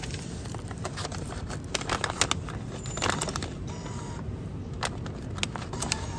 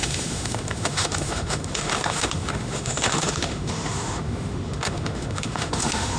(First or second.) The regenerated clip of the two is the second